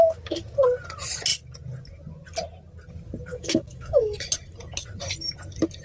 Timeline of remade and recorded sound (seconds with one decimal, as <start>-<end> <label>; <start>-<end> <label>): 0.0-3.3 recorded; 3.3-4.3 remade; 4.3-5.8 recorded

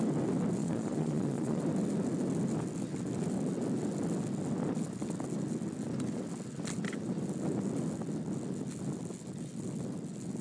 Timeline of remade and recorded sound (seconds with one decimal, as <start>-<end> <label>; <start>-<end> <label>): 0.0-0.6 recorded; 0.6-1.6 remade; 1.6-10.4 recorded

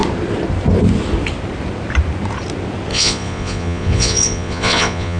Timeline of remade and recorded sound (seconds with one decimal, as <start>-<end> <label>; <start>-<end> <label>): 0.0-2.9 recorded; 2.9-5.2 remade

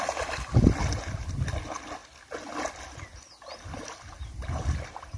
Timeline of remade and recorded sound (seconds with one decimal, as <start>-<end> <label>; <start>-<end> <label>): 0.0-5.2 recorded

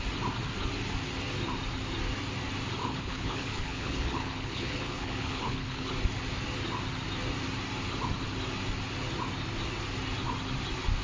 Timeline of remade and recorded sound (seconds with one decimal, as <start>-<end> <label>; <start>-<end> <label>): 0.0-2.8 recorded; 2.8-5.9 remade; 5.9-11.0 recorded

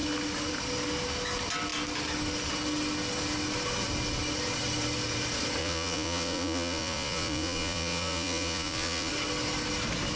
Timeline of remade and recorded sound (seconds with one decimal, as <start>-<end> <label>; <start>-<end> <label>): 0.0-5.6 recorded; 5.6-9.1 remade; 9.1-10.2 recorded

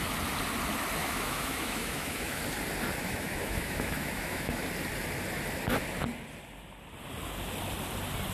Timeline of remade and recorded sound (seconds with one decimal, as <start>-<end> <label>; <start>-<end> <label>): 0.0-1.0 recorded; 1.0-2.4 remade; 2.4-3.0 recorded; 3.0-4.6 remade; 4.6-8.3 recorded

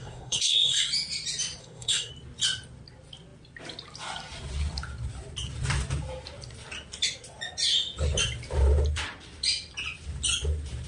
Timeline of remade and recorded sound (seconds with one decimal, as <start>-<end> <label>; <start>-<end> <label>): 0.0-0.9 remade; 0.9-1.6 recorded; 1.6-2.1 remade; 2.1-10.9 recorded